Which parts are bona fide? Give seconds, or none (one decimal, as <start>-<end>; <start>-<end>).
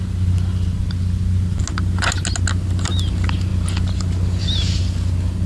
0.0-5.5